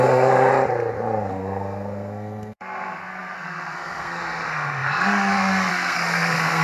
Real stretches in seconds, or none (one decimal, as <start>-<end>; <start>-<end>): 0.5-1.3